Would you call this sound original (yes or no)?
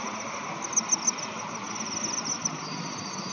yes